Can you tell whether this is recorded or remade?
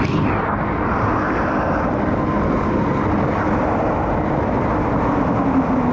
recorded